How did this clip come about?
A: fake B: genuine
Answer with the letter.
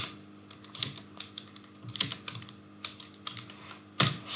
B